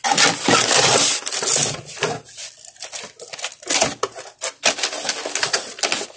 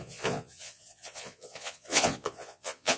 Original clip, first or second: first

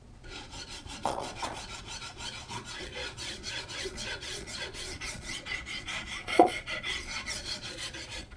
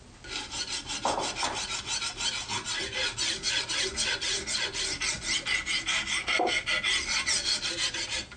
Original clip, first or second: second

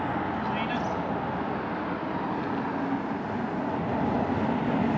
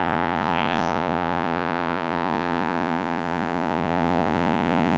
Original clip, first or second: first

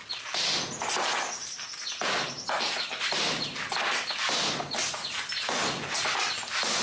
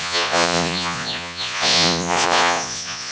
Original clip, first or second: first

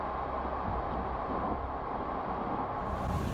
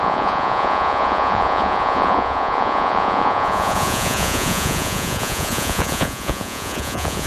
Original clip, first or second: first